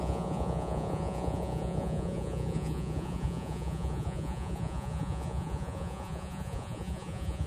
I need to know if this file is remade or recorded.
remade